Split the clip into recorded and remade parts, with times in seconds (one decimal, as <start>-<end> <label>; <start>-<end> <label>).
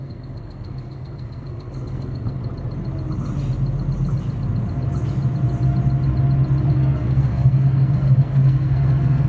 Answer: 0.0-2.4 remade; 2.4-6.7 recorded; 6.7-9.3 remade